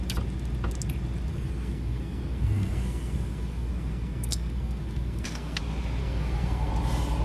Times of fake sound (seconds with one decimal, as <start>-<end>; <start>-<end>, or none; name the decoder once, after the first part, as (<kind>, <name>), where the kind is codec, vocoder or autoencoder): 1.3-5.6 (codec, SNAC); 6.0-6.7